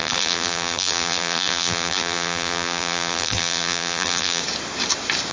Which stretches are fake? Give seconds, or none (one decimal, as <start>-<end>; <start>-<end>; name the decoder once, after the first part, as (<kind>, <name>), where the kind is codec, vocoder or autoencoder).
0.0-4.4 (vocoder, BigVGAN v2)